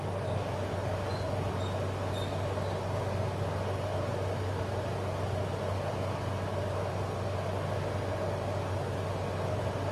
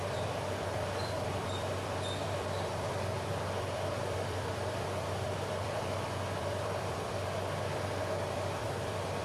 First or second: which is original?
first